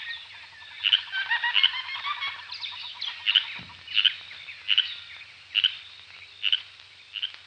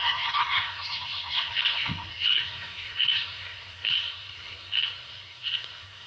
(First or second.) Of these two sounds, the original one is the first